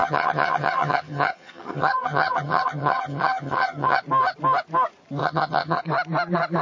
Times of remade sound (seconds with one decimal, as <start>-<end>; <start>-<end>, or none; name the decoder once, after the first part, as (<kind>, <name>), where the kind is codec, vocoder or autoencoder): 0.0-4.0 (vocoder, HiFi-GAN); 5.2-5.8